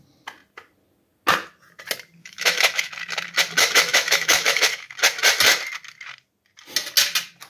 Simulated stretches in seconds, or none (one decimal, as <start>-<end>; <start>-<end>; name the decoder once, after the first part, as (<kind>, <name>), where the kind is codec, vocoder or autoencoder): 2.2-2.9 (autoencoder, DAC-VAE); 3.9-4.9